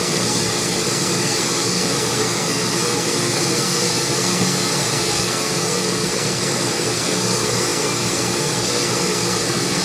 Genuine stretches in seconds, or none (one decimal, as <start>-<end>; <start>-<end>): none